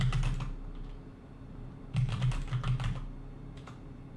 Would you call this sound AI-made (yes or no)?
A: no